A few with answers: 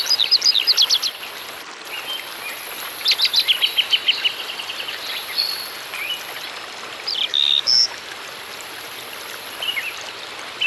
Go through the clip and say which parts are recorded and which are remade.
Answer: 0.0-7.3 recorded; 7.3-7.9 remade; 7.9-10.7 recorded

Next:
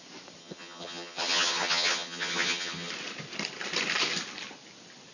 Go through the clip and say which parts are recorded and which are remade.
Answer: 0.0-0.4 recorded; 0.4-2.9 remade; 2.9-5.1 recorded

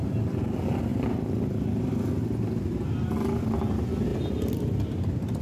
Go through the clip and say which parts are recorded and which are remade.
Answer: 0.0-5.4 recorded